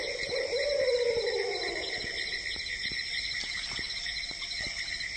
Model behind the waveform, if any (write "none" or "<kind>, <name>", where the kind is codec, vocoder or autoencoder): vocoder, BigVGAN v2